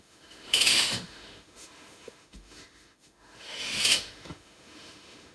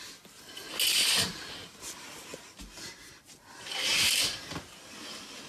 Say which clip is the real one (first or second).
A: second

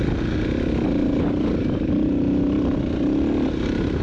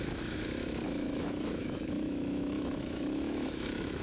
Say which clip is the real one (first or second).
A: first